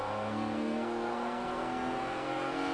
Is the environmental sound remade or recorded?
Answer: remade